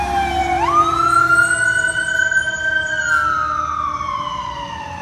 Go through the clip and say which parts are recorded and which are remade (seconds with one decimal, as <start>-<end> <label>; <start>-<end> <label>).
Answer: 0.0-0.4 remade; 0.4-2.4 recorded; 2.4-3.0 remade; 3.0-4.0 recorded; 4.0-5.0 remade